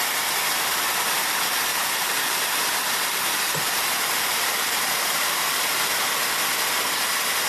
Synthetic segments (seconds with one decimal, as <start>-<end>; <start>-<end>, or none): 1.7-5.4